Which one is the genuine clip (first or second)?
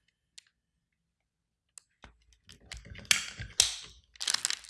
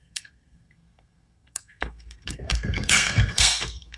first